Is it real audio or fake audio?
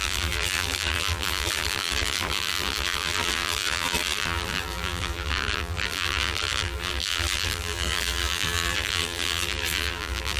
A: fake